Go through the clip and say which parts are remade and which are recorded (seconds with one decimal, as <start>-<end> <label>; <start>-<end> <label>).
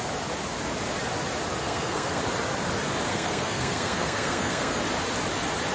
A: 0.0-1.6 recorded; 1.6-2.2 remade; 2.2-3.1 recorded; 3.1-4.8 remade; 4.8-5.7 recorded